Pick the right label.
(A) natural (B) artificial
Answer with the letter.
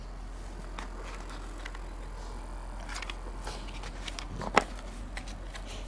A